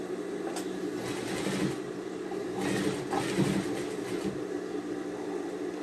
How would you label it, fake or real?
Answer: real